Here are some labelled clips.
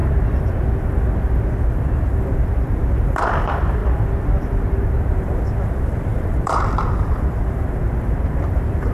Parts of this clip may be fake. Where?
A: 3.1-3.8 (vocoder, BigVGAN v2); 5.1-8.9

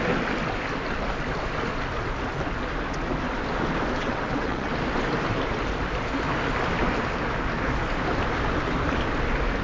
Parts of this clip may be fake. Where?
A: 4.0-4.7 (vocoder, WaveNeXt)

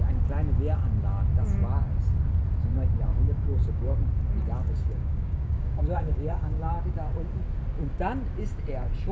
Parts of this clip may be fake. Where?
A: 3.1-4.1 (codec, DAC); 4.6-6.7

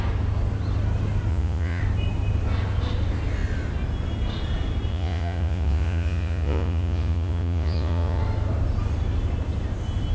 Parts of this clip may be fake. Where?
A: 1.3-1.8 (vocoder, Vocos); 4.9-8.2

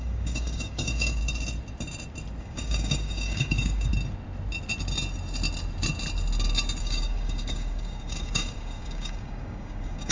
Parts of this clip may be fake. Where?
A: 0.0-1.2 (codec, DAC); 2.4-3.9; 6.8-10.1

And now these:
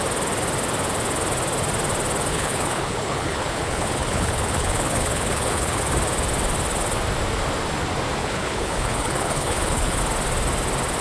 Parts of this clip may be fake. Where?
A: 2.3-5.8 (codec, HILCodec); 8.2-10.0

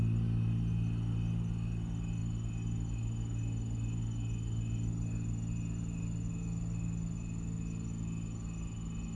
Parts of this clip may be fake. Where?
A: none

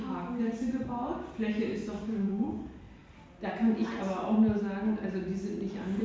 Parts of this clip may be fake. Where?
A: 2.1-2.6 (autoencoder, DAC-VAE)